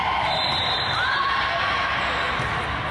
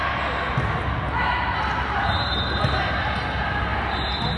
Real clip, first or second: second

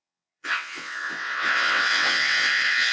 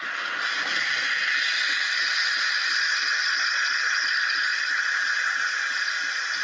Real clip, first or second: second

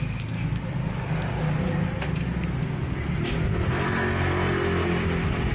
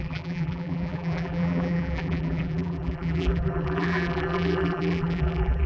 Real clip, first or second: first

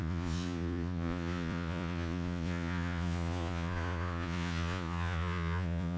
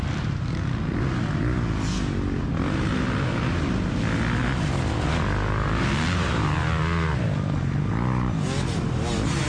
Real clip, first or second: second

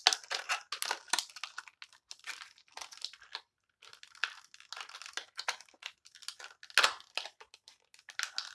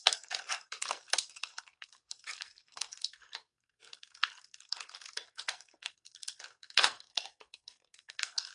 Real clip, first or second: first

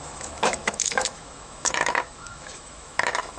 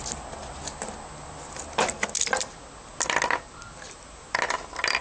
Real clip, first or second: second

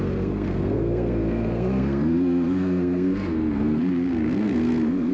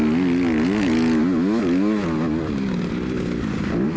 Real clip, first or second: second